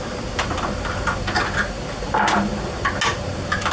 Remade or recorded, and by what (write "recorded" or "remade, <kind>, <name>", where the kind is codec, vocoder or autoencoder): recorded